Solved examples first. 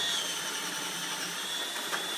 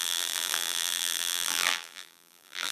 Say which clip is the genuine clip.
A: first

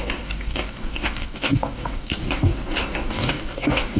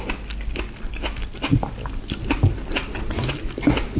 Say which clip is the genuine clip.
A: second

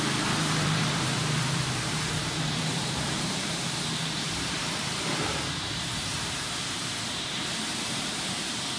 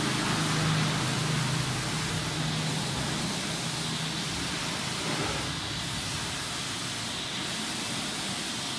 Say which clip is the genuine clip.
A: second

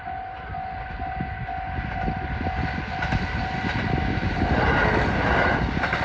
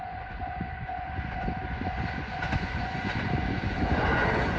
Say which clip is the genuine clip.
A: first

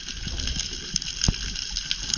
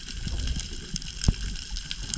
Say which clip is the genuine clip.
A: first